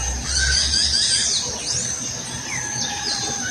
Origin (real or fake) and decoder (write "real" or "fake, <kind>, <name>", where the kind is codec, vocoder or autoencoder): real